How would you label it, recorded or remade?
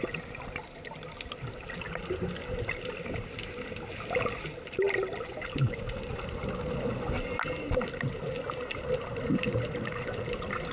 recorded